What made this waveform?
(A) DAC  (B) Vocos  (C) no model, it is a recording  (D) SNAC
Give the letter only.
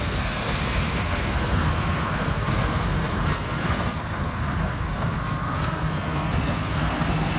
D